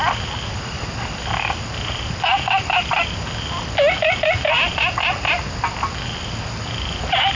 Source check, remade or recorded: recorded